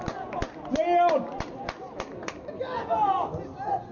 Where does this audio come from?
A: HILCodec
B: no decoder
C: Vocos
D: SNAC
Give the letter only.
B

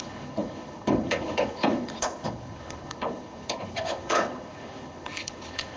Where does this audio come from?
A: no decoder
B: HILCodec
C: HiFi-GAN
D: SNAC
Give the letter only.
B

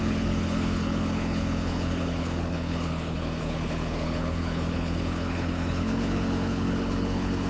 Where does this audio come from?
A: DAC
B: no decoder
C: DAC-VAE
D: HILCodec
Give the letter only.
D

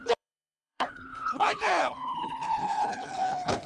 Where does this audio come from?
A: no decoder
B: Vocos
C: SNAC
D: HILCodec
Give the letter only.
D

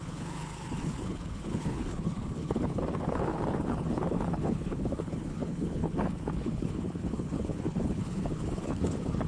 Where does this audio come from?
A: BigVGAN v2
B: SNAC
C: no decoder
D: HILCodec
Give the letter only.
D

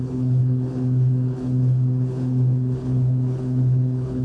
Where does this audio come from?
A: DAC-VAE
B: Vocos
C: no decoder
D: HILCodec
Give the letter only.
D